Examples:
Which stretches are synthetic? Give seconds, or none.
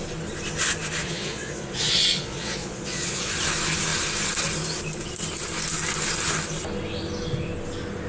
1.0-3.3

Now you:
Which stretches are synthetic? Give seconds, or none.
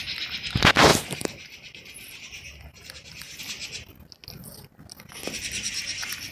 0.9-3.4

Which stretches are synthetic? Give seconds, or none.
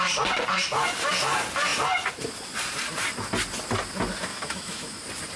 4.3-5.0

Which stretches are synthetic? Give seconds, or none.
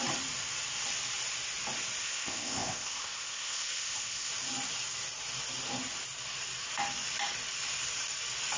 2.0-4.3